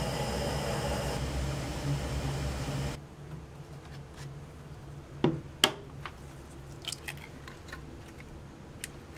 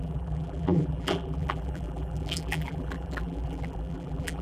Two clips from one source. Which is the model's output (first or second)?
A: second